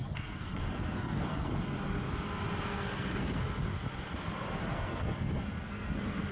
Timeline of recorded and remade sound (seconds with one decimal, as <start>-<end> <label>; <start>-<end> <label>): 0.0-1.5 remade; 1.5-2.6 recorded; 2.6-3.4 remade; 3.4-4.6 recorded; 4.6-6.3 remade